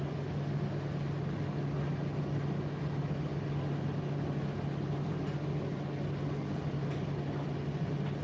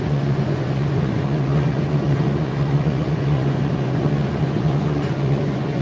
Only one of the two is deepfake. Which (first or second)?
second